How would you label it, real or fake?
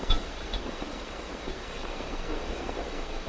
fake